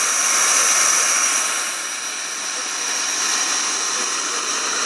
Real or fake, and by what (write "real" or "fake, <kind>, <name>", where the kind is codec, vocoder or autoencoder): real